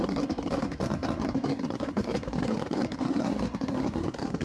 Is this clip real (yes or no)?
no